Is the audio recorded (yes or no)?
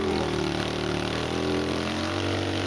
no